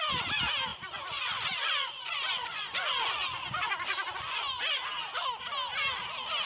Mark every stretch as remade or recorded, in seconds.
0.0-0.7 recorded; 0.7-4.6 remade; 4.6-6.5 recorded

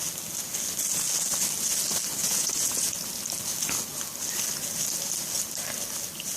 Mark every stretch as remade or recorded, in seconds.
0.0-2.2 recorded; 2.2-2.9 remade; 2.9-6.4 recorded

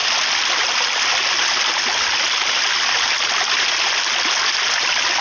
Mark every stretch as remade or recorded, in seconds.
0.0-5.2 recorded